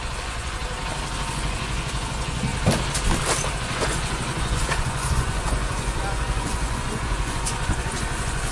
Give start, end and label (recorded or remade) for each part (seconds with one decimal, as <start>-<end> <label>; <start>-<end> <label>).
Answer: 0.0-0.6 remade; 0.6-1.3 recorded; 1.3-2.5 remade; 2.5-3.6 recorded; 3.6-8.5 remade

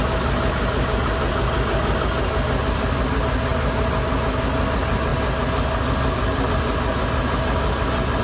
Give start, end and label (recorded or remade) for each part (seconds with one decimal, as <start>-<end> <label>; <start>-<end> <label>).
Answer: 0.0-3.5 recorded; 3.5-4.1 remade; 4.1-8.2 recorded

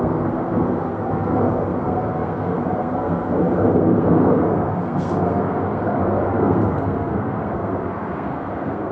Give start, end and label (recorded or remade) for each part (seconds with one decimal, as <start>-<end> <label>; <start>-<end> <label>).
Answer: 0.0-8.9 remade

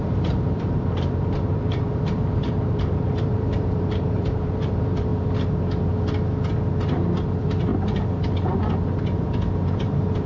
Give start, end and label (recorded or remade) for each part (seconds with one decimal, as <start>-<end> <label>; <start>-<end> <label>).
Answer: 0.0-5.1 remade; 5.1-7.2 recorded; 7.2-7.7 remade; 7.7-9.0 recorded; 9.0-10.3 remade